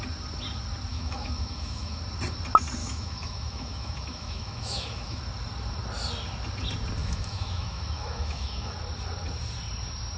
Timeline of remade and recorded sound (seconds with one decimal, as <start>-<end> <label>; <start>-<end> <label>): 0.0-0.9 recorded; 0.9-2.0 remade; 2.0-2.8 recorded; 2.8-5.2 remade; 5.2-7.0 recorded; 7.0-8.7 remade; 8.7-10.2 recorded

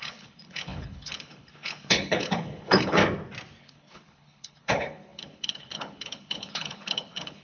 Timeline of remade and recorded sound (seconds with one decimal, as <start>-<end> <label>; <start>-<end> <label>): 0.0-3.0 remade; 3.0-3.6 recorded; 3.6-7.4 remade

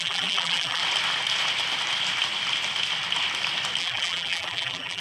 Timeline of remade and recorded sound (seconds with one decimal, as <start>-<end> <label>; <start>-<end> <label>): 0.0-0.8 remade; 0.8-3.8 recorded; 3.8-5.0 remade

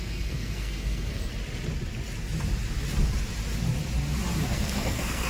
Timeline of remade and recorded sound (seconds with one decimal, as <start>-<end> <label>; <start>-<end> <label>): 0.0-1.3 remade; 1.3-4.5 recorded; 4.5-5.3 remade

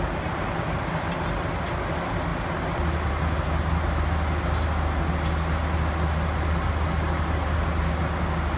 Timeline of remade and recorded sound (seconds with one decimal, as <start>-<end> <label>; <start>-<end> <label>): 0.0-8.6 recorded

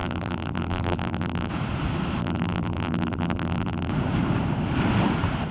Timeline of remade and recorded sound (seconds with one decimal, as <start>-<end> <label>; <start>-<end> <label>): 0.0-1.5 remade; 1.5-2.2 recorded; 2.2-3.9 remade; 3.9-5.5 recorded

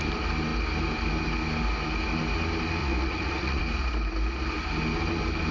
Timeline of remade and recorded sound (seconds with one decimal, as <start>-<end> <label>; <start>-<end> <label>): 0.0-2.8 recorded; 2.8-3.6 remade; 3.6-5.5 recorded

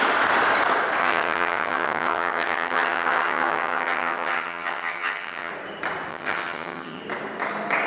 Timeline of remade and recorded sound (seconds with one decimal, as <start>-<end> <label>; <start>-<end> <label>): 0.0-1.0 recorded; 1.0-5.5 remade; 5.5-6.1 recorded; 6.1-7.0 remade; 7.0-7.9 recorded